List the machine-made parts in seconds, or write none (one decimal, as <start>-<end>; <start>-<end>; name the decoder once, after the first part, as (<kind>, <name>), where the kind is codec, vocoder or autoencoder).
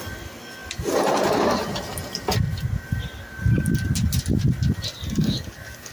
5.2-5.9 (codec, DAC)